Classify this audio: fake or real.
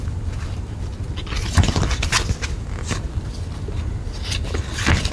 real